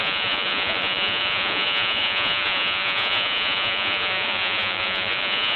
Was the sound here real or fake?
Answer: fake